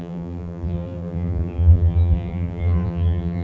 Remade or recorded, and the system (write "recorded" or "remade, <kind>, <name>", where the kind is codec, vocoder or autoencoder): remade, vocoder, BigVGAN v2